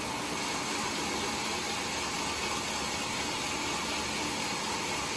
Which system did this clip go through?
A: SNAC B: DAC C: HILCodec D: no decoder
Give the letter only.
D